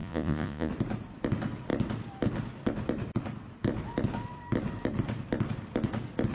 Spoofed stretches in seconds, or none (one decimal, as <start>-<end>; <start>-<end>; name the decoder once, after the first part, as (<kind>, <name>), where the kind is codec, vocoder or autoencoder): 0.0-0.7 (vocoder, Vocos)